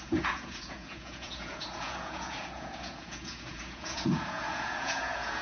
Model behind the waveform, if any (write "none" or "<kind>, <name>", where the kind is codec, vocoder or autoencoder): vocoder, Vocos